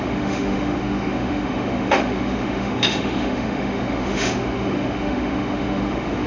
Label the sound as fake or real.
fake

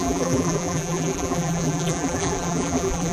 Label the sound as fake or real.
fake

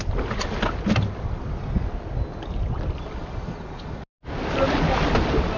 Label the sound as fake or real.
real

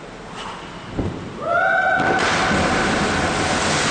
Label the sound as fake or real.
real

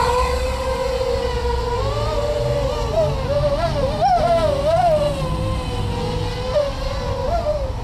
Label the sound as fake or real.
real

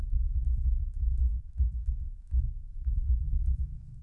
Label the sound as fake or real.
fake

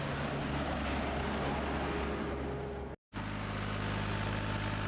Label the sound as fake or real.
real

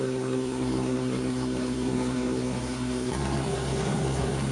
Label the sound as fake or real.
fake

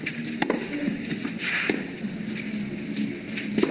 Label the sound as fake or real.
real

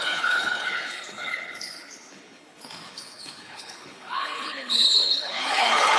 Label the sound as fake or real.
fake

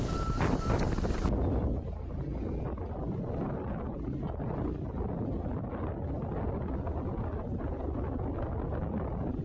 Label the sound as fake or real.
real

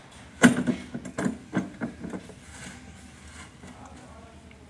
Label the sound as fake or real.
real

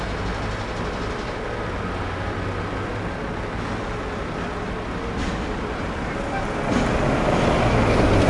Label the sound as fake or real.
real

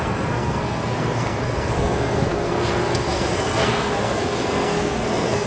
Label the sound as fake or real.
fake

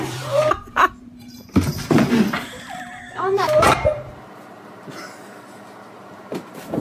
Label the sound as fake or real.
fake